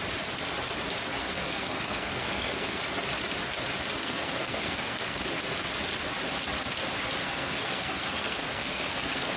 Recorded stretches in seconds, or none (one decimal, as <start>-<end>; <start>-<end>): 0.0-1.2; 2.8-4.0; 5.2-7.2